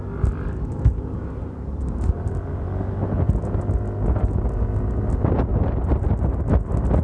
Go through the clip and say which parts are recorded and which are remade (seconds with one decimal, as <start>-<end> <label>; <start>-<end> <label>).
0.0-5.5 recorded; 5.5-6.4 remade; 6.4-7.0 recorded